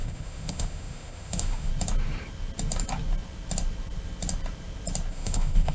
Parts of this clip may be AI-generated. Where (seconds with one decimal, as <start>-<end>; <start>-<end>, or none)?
0.0-1.7; 5.1-5.7